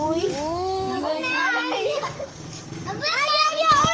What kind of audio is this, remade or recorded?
remade